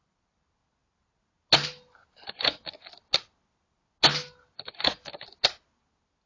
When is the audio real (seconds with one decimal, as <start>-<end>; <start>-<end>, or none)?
0.0-6.3